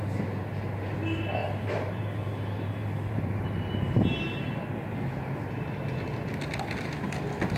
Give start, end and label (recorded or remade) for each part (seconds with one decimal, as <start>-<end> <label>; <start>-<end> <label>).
0.0-1.4 recorded; 1.4-3.7 remade; 3.7-7.6 recorded